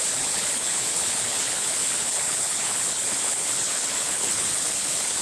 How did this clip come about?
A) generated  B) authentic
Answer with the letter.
A